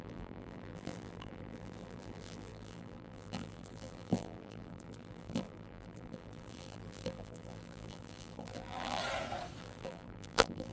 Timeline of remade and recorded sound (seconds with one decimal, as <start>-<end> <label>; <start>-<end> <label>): 0.0-9.0 remade; 9.0-9.6 recorded; 9.6-10.7 remade